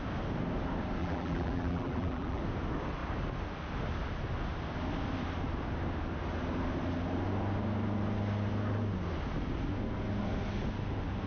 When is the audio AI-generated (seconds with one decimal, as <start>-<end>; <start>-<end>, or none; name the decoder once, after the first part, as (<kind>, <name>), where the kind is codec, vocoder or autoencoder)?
1.0-2.4 (vocoder, BigVGAN v2)